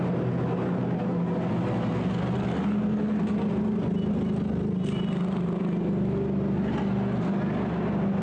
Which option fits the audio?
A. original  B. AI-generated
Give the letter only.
A